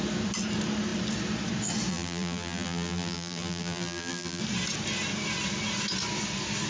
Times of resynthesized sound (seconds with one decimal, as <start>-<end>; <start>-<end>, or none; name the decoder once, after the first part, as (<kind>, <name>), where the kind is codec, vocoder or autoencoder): 1.9-4.4 (vocoder, BigVGAN v2)